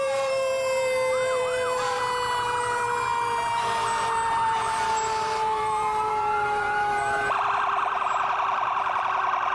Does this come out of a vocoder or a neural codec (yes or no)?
yes